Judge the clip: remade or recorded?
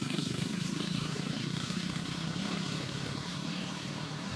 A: remade